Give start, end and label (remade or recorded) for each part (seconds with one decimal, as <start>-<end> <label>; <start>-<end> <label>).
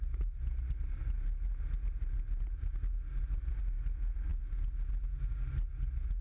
0.0-6.2 recorded